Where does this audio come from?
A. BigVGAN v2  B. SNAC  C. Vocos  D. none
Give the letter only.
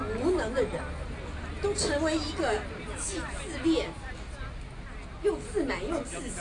D